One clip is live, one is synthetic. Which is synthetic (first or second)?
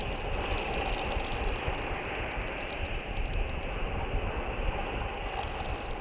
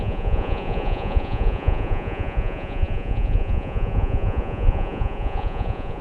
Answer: second